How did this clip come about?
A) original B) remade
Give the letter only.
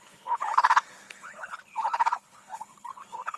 B